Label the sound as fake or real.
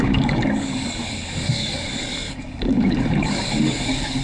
fake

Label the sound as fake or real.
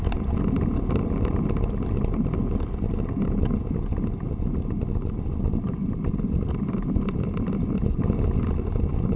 real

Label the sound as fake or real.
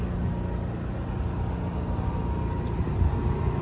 real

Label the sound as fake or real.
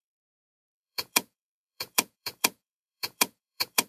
fake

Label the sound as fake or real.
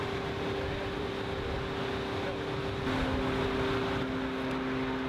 real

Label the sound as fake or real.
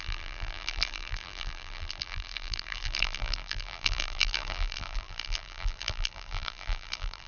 fake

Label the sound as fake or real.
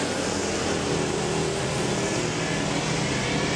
real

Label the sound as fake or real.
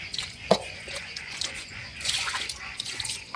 fake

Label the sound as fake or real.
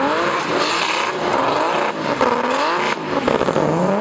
real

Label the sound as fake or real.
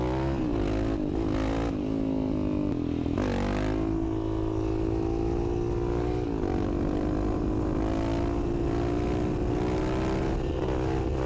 real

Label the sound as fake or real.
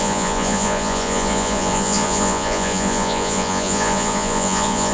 fake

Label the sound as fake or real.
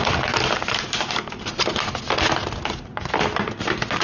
real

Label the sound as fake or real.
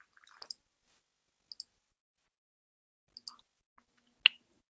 real